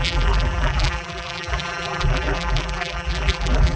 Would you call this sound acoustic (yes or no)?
no